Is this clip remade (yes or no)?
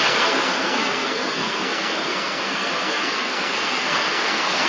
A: yes